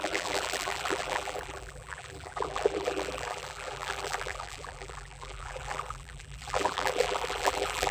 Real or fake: fake